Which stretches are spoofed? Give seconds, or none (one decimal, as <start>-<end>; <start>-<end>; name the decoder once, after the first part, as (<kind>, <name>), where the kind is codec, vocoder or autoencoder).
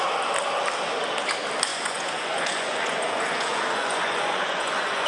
1.7-5.1 (vocoder, Vocos)